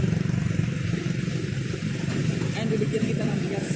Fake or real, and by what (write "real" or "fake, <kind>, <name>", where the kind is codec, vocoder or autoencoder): real